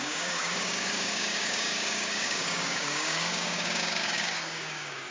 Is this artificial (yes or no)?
yes